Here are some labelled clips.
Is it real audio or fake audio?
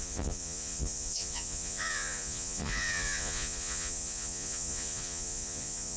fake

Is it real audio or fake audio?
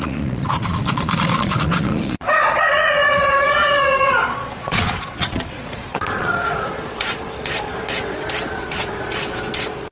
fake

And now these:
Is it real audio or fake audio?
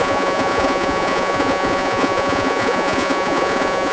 fake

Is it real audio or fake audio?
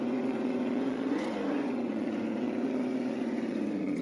fake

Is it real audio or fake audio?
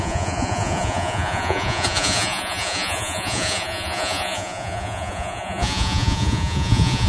fake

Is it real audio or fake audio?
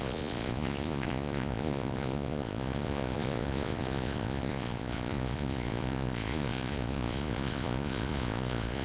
fake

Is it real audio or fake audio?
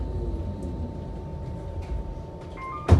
real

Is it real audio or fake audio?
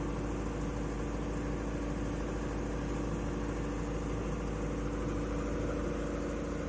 real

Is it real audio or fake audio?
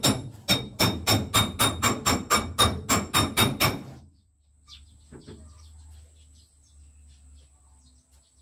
real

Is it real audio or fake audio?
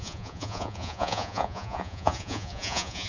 fake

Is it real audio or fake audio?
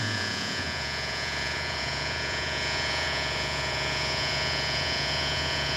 fake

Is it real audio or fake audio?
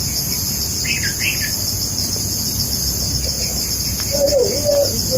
real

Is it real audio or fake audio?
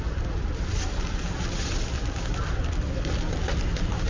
real